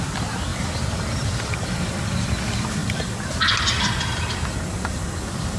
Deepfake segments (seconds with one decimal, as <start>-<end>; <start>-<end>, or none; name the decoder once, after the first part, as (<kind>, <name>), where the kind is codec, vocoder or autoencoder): 0.5-2.4 (vocoder, BigVGAN v2); 2.8-3.4